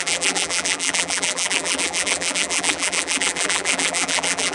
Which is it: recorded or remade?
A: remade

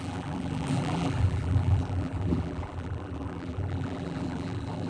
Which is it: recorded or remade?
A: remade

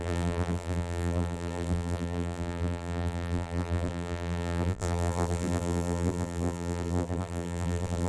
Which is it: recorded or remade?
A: remade